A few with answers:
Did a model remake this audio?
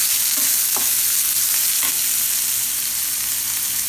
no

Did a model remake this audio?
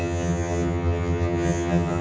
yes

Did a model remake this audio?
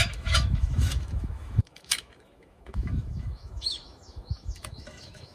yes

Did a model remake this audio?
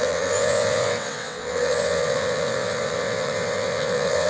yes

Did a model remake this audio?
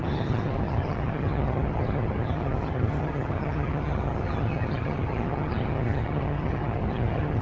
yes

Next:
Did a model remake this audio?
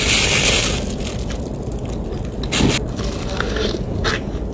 no